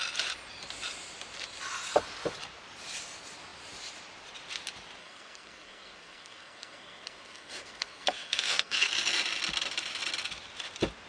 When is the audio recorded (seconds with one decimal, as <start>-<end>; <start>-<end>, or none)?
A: 0.0-5.0; 8.9-11.1